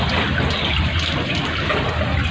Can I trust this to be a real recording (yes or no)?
yes